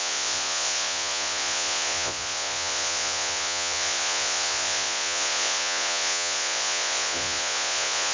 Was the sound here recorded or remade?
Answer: remade